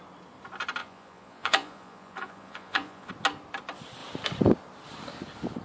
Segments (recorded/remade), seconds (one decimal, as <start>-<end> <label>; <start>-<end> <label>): 0.0-0.8 recorded; 0.8-3.1 remade; 3.1-5.6 recorded